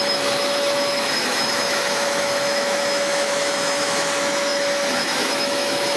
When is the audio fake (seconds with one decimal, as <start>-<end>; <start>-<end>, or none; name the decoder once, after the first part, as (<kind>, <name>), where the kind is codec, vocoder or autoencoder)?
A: 0.0-6.0 (autoencoder, DAC-VAE)